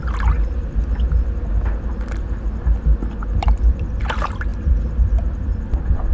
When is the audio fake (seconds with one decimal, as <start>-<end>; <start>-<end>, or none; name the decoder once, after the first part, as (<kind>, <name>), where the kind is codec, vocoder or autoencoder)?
3.7-6.1 (vocoder, BigVGAN v2)